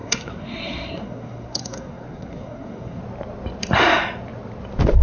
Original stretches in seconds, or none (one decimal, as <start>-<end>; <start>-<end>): 3.0-5.0